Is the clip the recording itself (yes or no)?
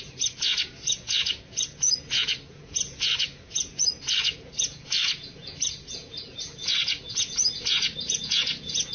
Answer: no